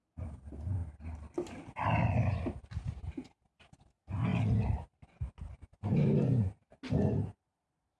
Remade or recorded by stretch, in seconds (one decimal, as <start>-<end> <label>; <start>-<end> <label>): 0.0-8.0 recorded